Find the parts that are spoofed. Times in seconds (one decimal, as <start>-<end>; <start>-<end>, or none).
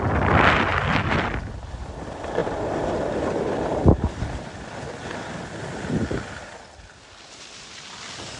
0.7-1.4; 2.4-4.8